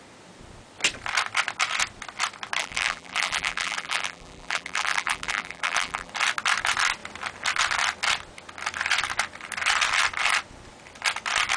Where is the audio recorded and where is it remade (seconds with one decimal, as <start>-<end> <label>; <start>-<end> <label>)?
0.0-2.6 recorded; 2.6-6.1 remade; 6.1-11.6 recorded